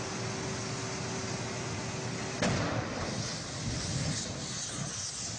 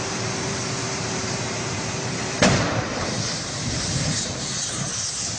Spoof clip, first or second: second